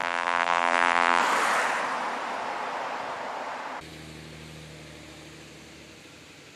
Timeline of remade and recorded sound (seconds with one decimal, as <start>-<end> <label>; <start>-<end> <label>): 0.0-1.2 remade; 1.2-6.6 recorded

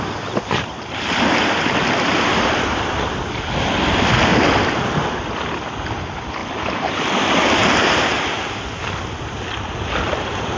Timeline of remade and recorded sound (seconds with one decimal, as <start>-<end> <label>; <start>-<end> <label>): 0.0-4.3 remade; 4.3-5.0 recorded; 5.0-6.4 remade; 6.4-7.0 recorded; 7.0-10.6 remade